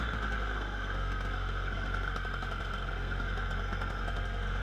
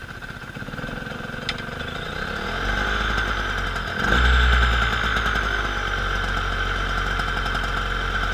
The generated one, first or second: first